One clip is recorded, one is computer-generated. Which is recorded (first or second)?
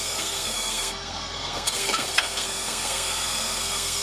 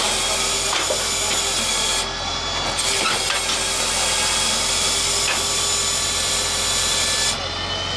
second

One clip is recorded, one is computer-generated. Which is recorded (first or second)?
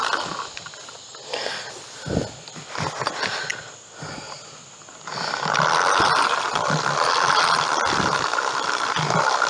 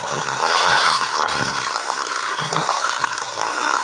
first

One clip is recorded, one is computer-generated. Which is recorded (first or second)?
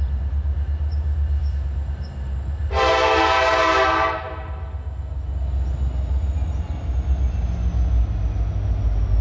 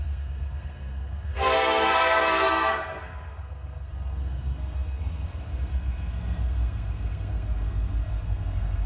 first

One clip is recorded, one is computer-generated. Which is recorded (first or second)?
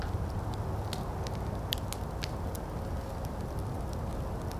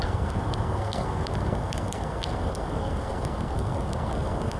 first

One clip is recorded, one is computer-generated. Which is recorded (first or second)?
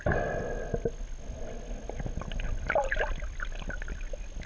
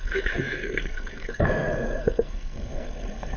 first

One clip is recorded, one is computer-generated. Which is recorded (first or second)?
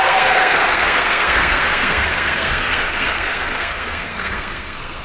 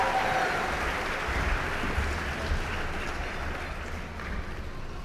second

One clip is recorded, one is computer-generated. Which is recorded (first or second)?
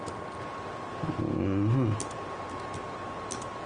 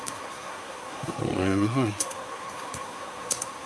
first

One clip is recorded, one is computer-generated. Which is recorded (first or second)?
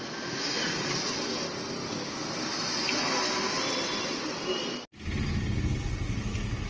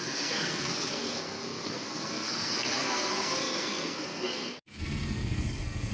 first